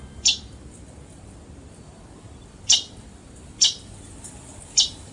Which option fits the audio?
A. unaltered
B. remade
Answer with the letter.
B